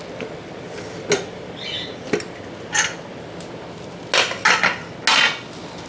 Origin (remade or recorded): recorded